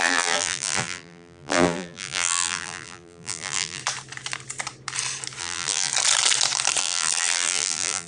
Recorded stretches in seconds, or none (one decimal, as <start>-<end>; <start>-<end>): 3.8-5.4; 5.9-6.8